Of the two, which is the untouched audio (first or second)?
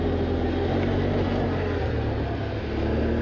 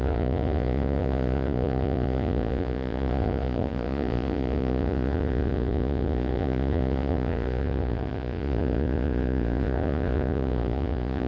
first